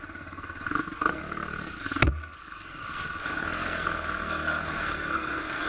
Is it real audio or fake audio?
fake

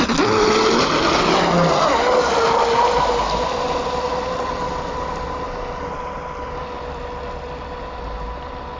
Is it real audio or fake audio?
real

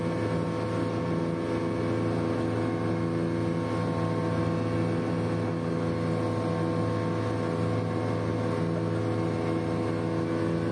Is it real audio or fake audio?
real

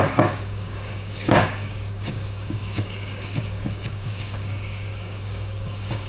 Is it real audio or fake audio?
fake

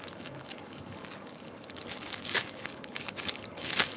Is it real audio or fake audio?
fake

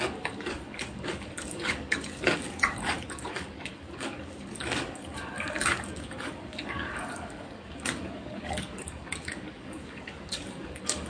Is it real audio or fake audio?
fake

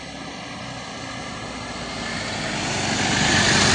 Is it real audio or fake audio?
real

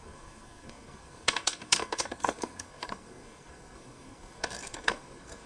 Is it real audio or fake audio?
fake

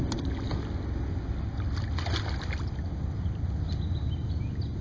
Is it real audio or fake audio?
real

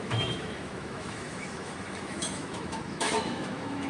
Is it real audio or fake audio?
fake